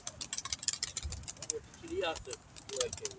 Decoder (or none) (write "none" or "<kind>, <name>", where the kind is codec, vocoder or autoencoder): none